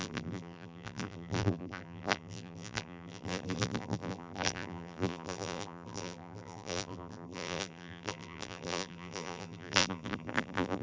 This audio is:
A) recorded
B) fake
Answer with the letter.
B